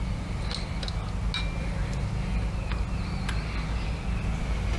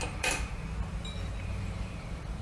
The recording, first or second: first